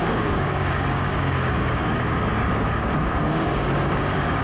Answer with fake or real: fake